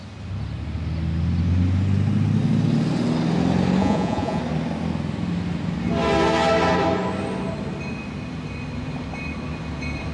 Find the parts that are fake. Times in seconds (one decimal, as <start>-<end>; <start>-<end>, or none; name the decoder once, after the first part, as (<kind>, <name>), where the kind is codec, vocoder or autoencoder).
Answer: 3.8-4.4 (vocoder, Vocos)